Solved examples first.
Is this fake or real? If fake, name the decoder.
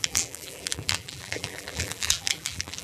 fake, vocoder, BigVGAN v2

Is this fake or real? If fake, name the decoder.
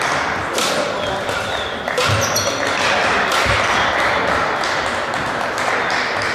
real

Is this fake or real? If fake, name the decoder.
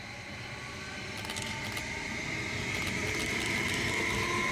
real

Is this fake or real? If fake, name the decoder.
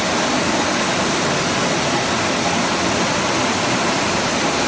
real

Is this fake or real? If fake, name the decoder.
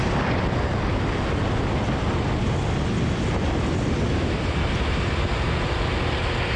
real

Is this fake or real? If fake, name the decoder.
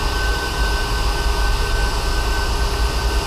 real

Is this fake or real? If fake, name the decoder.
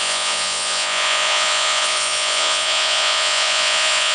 fake, vocoder, Vocos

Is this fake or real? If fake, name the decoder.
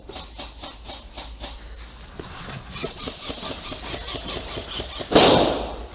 real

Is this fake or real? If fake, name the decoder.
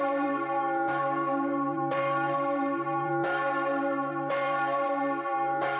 fake, vocoder, BigVGAN v2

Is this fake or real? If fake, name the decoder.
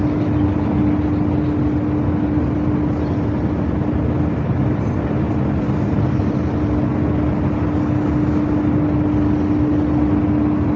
real